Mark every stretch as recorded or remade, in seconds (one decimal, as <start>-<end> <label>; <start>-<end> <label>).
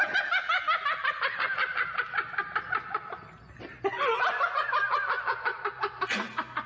0.0-6.7 recorded